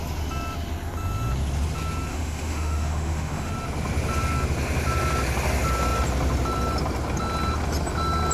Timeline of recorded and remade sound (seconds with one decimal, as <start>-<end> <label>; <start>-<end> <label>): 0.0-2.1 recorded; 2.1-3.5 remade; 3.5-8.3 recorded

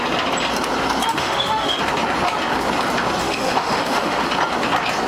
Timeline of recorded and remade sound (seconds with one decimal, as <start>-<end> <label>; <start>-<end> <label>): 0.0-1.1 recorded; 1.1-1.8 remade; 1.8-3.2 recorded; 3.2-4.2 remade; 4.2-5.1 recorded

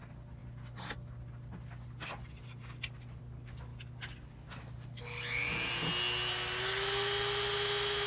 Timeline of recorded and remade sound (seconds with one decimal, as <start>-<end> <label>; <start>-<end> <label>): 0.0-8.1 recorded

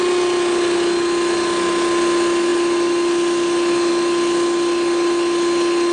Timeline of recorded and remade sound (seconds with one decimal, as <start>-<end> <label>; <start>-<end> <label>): 0.0-5.9 recorded

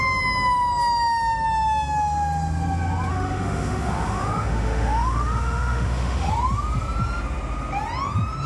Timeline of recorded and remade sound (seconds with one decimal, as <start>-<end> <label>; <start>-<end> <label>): 0.0-3.1 recorded; 3.1-6.3 remade; 6.3-8.5 recorded

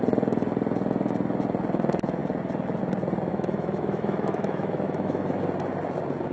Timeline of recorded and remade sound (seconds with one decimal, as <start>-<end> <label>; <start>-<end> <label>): 0.0-3.3 recorded; 3.3-5.4 remade; 5.4-6.3 recorded